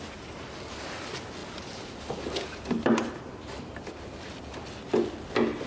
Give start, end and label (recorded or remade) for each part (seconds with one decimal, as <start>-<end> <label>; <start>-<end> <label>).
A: 0.0-5.7 recorded